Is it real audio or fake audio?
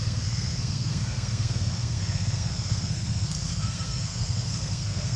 fake